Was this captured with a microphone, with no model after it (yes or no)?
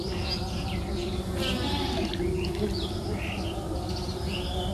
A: yes